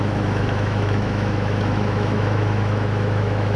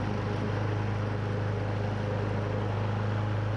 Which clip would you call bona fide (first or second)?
second